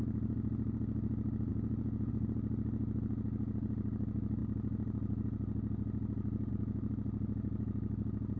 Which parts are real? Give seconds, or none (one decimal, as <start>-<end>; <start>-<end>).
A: 0.0-1.5; 2.1-8.4